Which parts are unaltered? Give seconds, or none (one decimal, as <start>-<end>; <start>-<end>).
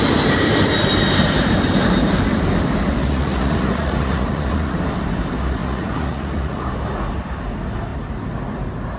0.0-3.0; 4.8-5.6; 6.7-9.0